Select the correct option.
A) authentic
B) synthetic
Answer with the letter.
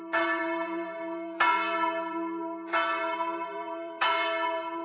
B